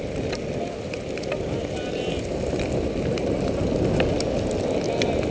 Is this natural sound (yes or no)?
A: yes